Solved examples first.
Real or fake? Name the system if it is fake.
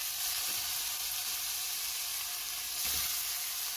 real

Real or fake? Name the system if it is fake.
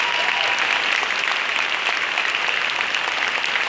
real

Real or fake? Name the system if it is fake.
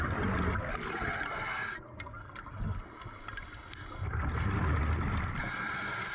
real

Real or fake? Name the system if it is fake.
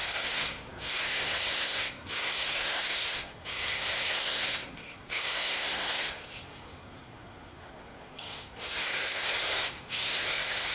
fake, codec, SNAC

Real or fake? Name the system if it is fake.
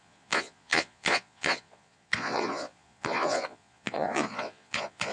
fake, vocoder, Vocos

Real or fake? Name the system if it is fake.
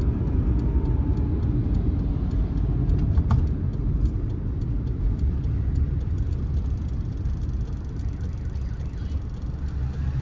real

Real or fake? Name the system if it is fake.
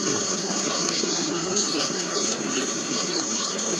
fake, codec, SNAC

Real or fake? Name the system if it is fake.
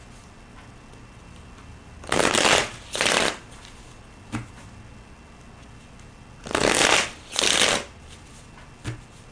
real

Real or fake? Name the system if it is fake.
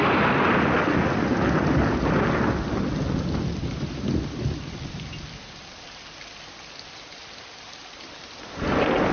real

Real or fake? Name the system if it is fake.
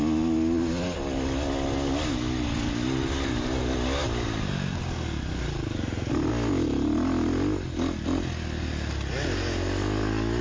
real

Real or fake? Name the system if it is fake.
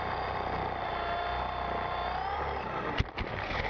real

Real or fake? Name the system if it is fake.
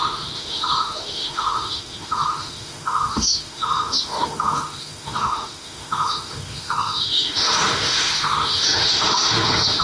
fake, autoencoder, DAC-VAE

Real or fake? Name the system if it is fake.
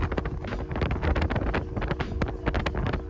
real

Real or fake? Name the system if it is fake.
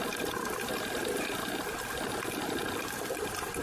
real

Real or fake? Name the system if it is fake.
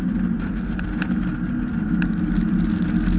real